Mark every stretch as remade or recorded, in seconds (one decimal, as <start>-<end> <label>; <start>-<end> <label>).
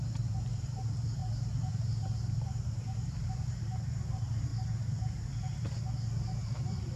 0.0-1.2 remade; 1.2-1.7 recorded; 1.7-4.5 remade; 4.5-6.4 recorded; 6.4-7.0 remade